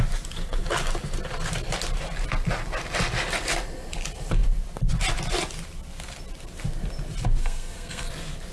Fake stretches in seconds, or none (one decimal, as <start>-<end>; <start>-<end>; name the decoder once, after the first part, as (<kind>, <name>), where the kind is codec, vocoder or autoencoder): 7.4-8.1 (codec, SNAC)